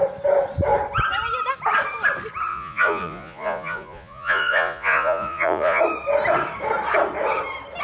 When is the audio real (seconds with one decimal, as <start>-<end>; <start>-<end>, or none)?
0.0-2.5; 5.8-7.8